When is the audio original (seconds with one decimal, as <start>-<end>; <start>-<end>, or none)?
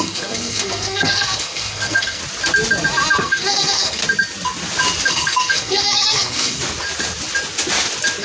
2.2-3.2; 4.0-5.1; 6.6-8.2